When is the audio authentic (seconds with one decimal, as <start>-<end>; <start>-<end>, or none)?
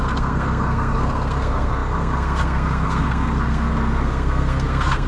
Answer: none